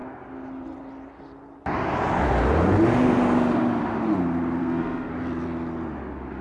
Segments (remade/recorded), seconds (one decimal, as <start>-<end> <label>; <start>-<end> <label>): 0.0-4.6 recorded; 4.6-5.1 remade; 5.1-6.4 recorded